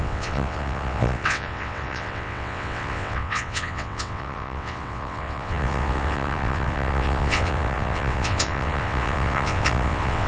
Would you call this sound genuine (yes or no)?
no